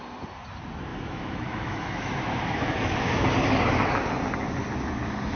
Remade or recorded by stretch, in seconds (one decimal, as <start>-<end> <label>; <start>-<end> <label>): 0.0-0.9 recorded; 0.9-3.3 remade; 3.3-5.4 recorded